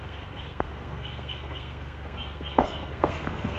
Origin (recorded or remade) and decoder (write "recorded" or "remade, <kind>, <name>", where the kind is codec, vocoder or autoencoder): remade, codec, SNAC